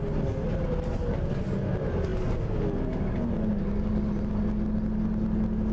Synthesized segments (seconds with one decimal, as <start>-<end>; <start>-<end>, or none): none